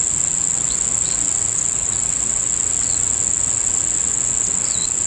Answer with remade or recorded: recorded